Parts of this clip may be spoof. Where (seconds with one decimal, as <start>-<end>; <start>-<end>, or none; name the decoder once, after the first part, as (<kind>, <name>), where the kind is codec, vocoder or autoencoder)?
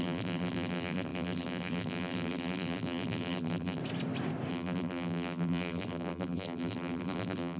0.0-3.8 (vocoder, BigVGAN v2); 4.5-7.6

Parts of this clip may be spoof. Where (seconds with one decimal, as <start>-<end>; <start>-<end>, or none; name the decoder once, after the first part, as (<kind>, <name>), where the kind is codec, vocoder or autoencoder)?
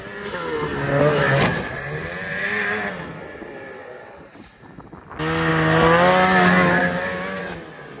6.8-7.4 (codec, DAC)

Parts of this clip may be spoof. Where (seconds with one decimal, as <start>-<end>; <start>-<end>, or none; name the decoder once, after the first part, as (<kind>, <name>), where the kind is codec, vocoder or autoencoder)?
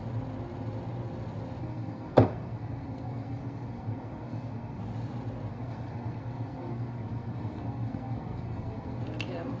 1.6-4.8 (codec, SNAC); 5.5-9.0